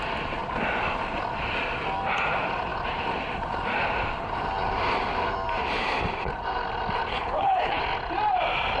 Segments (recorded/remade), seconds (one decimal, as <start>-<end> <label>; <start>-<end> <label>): 0.0-7.1 recorded; 7.1-7.8 remade; 7.8-8.8 recorded